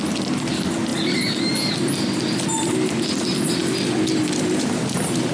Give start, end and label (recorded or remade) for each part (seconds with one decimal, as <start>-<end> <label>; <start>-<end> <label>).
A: 0.0-5.3 recorded